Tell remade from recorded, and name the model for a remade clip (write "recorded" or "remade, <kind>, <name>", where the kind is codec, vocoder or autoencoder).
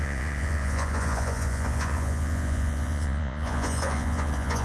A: remade, vocoder, Vocos